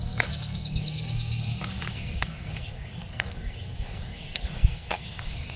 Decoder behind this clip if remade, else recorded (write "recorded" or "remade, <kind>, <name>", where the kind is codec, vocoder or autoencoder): remade, codec, SNAC